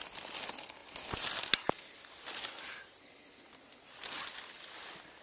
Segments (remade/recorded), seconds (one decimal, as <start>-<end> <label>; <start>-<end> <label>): 0.0-5.2 recorded